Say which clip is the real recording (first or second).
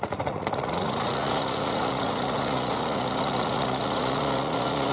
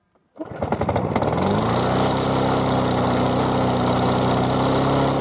second